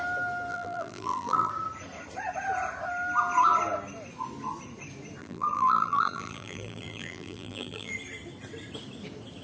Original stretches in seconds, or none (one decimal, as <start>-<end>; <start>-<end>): 0.0-0.5; 1.5-5.2; 7.9-9.4